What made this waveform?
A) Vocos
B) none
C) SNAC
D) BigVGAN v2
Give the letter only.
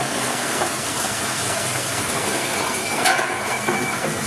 C